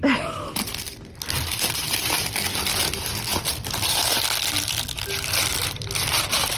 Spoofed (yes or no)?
no